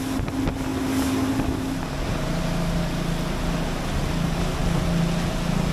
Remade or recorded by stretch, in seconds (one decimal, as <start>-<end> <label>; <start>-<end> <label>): 0.0-5.7 recorded